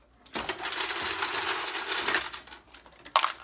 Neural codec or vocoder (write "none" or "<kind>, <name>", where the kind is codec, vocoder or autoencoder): none